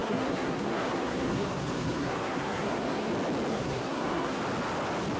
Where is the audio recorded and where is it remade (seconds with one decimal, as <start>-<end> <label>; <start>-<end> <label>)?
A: 0.0-3.1 remade; 3.1-3.5 recorded; 3.5-4.4 remade; 4.4-5.2 recorded